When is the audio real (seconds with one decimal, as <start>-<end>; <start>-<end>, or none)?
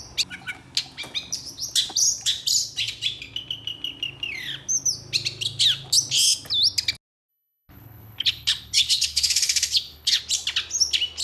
0.0-7.3; 10.2-11.2